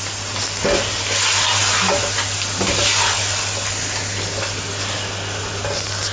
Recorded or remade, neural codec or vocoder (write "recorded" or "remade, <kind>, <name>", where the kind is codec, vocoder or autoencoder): recorded